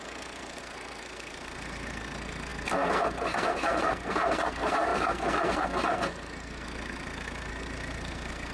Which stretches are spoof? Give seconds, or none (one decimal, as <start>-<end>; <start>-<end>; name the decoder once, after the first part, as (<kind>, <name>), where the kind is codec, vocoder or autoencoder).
0.0-8.5 (codec, SNAC)